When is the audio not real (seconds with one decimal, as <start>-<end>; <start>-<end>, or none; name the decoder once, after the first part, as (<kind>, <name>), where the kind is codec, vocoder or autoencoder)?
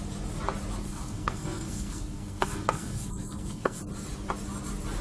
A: 0.8-3.8 (codec, SNAC)